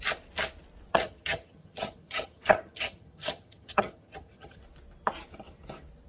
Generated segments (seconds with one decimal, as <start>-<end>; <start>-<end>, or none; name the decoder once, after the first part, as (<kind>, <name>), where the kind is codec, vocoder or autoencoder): 0.9-4.6 (vocoder, HiFi-GAN)